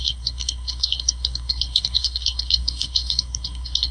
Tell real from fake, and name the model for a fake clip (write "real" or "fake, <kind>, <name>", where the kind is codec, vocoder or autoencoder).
fake, codec, SNAC